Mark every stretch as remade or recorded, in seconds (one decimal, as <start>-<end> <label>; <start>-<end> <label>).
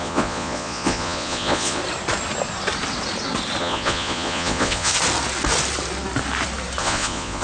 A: 0.0-1.8 remade; 1.8-3.6 recorded; 3.6-4.9 remade; 4.9-6.8 recorded; 6.8-7.4 remade